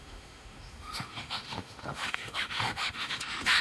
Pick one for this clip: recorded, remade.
remade